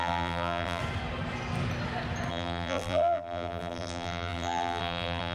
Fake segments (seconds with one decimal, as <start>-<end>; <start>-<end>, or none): 0.0-0.8; 2.3-5.3